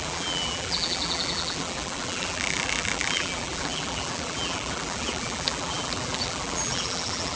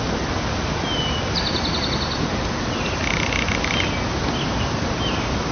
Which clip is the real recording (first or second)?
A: second